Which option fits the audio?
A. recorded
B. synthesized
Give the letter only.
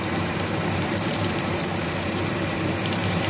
B